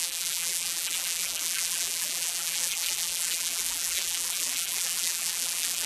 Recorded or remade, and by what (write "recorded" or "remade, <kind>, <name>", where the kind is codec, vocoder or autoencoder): remade, vocoder, BigVGAN v2